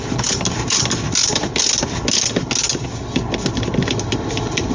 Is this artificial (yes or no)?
no